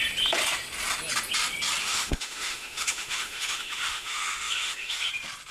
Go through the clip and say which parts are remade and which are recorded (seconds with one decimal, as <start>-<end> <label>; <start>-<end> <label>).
0.0-1.8 recorded; 1.8-5.1 remade; 5.1-5.5 recorded